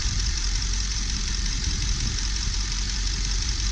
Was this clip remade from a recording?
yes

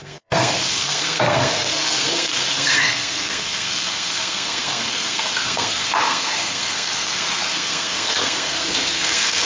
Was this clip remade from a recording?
yes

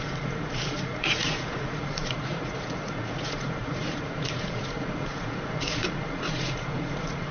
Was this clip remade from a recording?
yes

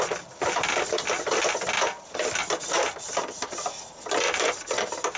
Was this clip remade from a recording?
no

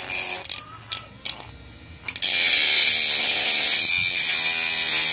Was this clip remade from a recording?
no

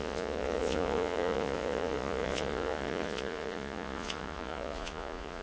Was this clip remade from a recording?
yes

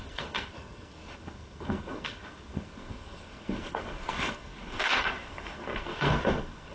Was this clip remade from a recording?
yes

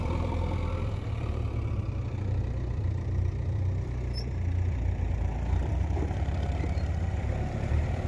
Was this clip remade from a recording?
yes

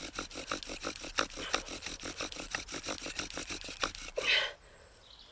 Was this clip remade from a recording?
no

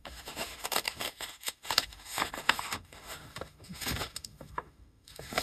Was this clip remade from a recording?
yes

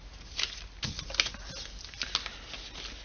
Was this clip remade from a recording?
no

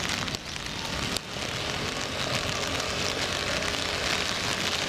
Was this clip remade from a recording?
no